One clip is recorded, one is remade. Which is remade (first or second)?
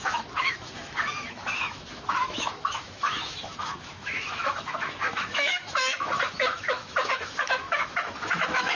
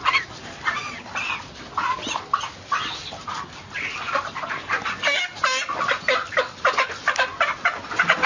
first